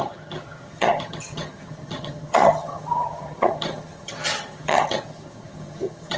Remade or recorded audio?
remade